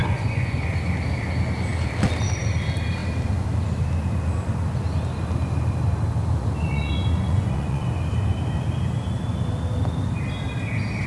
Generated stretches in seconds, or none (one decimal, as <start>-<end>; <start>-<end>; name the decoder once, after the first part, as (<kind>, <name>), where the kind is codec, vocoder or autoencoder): 0.0-0.7 (vocoder, Vocos); 6.4-7.8